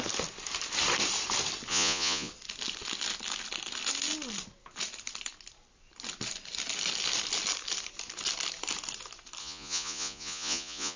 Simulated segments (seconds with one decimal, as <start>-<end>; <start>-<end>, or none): 1.7-2.3; 9.4-11.0